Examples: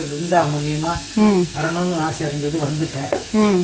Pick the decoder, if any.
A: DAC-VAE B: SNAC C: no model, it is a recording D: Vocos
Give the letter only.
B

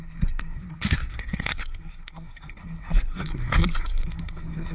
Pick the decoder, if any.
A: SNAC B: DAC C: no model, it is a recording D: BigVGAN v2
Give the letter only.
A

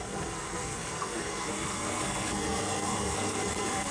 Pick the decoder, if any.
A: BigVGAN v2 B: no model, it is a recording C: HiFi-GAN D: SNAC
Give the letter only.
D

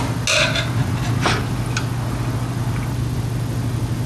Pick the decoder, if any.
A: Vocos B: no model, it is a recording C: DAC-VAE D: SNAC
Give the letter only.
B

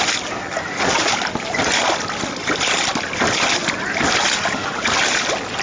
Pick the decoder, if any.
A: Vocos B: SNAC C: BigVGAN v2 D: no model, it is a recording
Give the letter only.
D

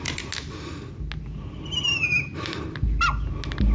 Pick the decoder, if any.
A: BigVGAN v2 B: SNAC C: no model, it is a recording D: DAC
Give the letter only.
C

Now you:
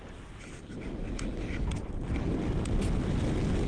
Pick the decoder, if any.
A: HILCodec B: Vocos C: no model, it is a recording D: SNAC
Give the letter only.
C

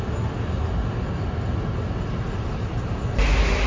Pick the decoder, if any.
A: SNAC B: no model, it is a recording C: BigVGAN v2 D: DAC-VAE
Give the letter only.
B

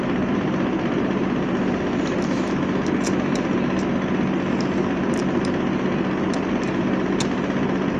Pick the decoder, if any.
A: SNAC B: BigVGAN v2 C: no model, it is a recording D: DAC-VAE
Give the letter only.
C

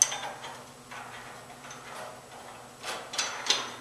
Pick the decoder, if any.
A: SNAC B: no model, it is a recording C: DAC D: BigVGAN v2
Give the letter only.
B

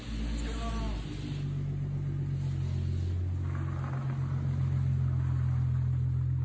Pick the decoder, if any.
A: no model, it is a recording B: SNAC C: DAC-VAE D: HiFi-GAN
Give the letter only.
A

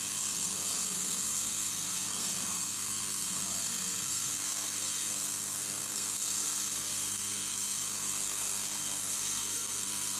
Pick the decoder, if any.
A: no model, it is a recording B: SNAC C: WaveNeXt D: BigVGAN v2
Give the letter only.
B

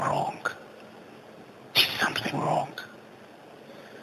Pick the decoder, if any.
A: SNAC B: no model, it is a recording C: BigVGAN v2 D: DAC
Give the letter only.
B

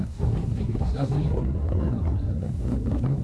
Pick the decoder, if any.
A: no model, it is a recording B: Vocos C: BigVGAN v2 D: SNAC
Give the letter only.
D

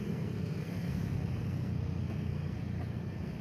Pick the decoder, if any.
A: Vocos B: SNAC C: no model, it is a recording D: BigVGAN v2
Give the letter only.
B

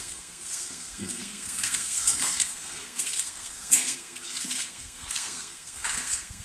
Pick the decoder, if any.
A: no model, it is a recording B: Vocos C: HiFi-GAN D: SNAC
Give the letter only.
D